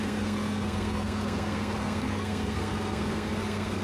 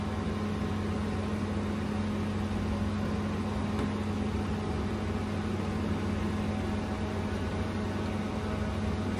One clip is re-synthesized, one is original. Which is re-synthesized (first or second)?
first